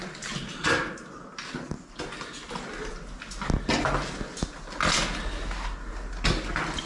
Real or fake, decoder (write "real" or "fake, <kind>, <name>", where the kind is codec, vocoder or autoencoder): real